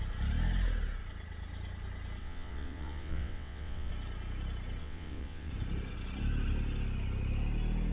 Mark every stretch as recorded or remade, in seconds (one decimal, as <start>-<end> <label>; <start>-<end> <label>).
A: 0.0-2.2 recorded; 2.2-3.9 remade; 3.9-4.8 recorded; 4.8-5.5 remade; 5.5-7.9 recorded